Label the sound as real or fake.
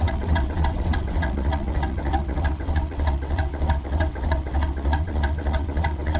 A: fake